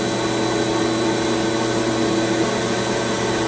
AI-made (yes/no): no